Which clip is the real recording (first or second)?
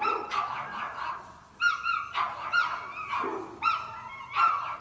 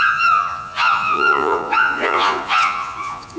first